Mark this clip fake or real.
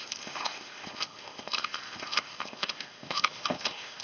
fake